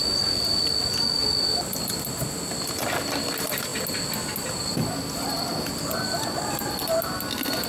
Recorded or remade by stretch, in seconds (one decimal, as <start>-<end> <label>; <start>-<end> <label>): 0.0-7.7 recorded